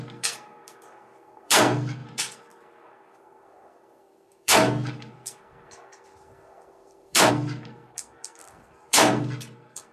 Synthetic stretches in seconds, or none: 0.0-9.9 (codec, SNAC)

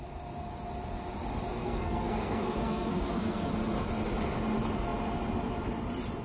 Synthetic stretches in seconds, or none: 1.6-3.5 (codec, SNAC)

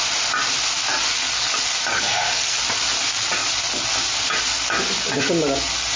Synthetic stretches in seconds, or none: 1.9-2.6 (codec, SNAC)

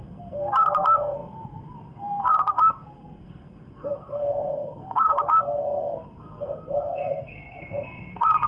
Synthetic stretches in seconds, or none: 0.0-8.5 (codec, SNAC)

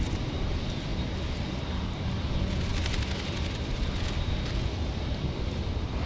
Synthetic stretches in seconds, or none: none

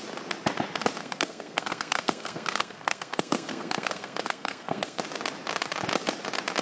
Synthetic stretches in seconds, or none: 1.0-5.0 (codec, SNAC)

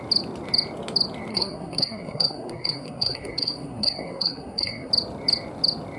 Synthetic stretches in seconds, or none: 1.3-4.9 (codec, SNAC)